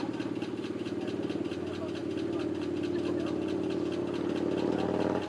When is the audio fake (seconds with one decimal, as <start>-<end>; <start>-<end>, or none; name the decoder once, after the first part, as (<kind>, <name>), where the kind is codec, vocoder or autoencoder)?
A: none